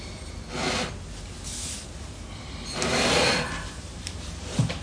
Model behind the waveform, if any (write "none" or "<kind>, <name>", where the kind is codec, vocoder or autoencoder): none